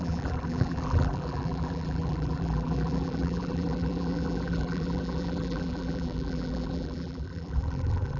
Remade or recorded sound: remade